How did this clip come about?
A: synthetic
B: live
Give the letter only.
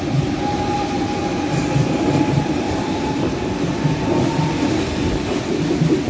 B